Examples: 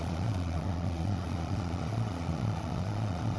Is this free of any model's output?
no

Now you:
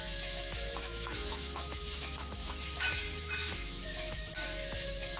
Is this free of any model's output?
no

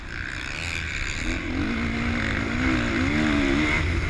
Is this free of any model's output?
yes